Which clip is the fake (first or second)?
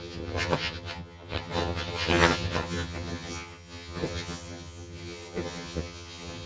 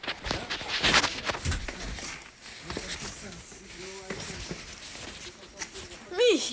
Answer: first